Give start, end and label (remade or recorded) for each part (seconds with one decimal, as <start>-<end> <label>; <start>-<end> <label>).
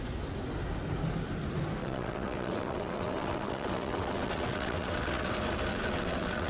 0.0-1.8 recorded; 1.8-5.3 remade; 5.3-5.7 recorded; 5.7-6.5 remade